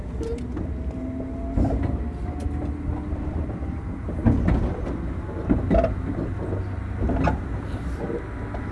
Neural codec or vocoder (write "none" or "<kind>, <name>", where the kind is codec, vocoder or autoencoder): none